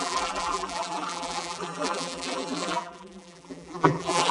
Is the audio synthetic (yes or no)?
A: yes